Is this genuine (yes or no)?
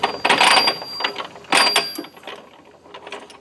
yes